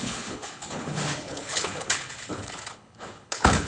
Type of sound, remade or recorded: remade